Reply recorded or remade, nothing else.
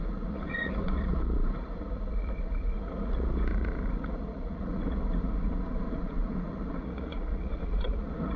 remade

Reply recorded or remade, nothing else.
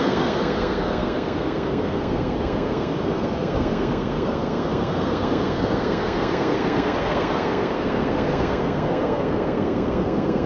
remade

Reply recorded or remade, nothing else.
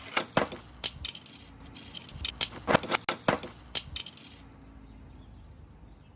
recorded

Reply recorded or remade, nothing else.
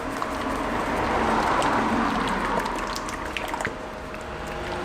recorded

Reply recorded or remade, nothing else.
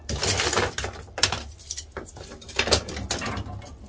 recorded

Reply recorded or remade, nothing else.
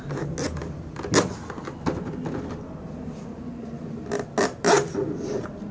recorded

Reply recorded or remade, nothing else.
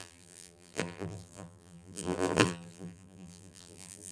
remade